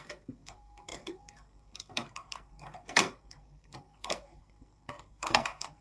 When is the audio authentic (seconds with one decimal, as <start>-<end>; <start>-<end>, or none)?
none